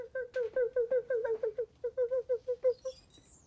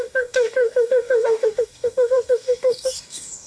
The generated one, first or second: second